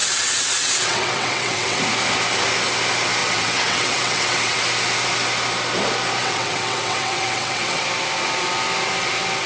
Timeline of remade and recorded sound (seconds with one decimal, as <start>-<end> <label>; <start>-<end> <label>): 0.0-1.8 remade; 1.8-3.2 recorded; 3.2-4.6 remade; 4.6-6.2 recorded; 6.2-7.8 remade; 7.8-9.5 recorded